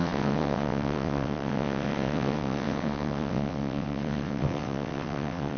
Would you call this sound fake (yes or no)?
yes